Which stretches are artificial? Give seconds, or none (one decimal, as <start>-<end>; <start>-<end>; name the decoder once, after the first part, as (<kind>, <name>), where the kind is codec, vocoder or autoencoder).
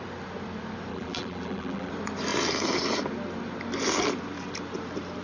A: 0.9-1.9 (vocoder, BigVGAN v2)